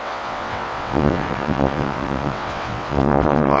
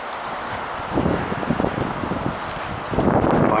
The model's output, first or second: first